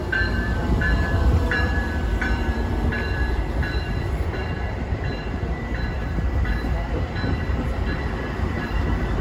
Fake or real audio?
fake